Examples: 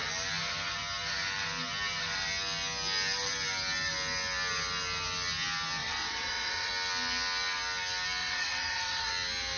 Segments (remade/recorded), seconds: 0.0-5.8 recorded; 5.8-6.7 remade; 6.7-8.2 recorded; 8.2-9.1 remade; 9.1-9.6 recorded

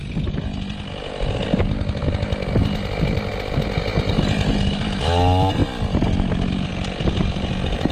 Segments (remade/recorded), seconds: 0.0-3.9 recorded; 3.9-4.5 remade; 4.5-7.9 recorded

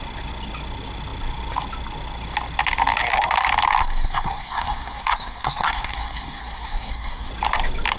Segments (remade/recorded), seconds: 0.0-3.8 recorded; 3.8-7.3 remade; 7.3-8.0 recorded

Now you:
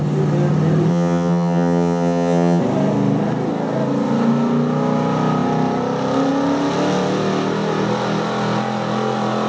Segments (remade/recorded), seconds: 0.0-0.9 recorded; 0.9-2.6 remade; 2.6-9.5 recorded